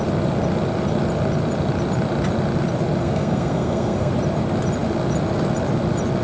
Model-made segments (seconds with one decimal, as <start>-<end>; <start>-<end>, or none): 3.0-4.1